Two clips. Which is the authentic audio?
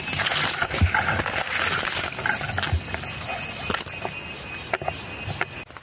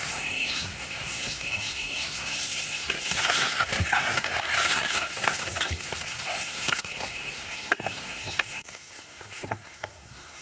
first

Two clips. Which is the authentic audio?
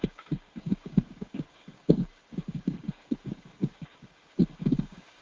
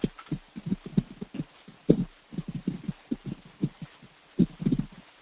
second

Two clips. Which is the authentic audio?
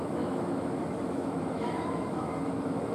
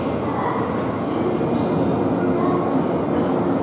second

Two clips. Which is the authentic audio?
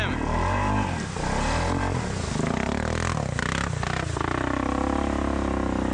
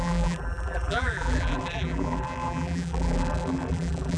first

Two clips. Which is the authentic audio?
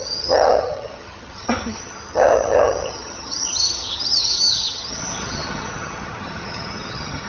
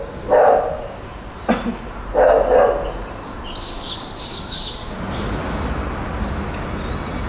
second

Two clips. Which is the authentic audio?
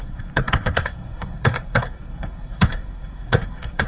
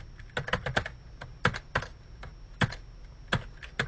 second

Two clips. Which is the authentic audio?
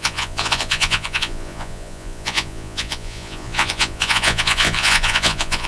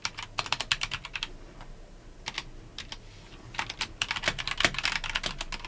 second